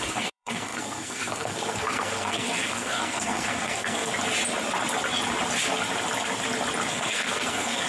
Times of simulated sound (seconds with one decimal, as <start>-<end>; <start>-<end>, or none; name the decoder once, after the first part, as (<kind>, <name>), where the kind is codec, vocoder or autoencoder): 0.0-4.1 (codec, SNAC); 6.9-7.9